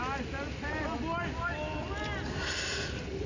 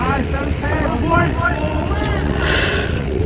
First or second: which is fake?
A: second